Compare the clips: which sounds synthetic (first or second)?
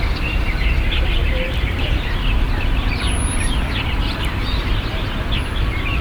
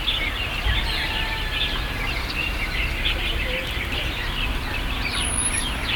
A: first